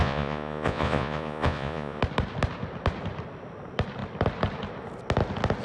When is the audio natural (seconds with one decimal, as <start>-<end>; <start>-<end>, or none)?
2.0-5.6